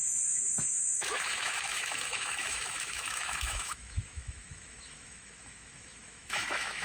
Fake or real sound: fake